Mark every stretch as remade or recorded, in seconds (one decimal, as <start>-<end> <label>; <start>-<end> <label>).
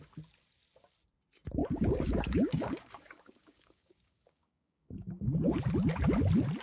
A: 0.0-1.6 recorded; 1.6-5.6 remade; 5.6-6.6 recorded